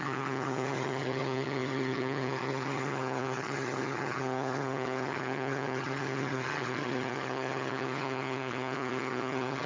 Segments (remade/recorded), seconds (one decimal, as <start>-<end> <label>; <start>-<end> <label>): 0.0-9.7 remade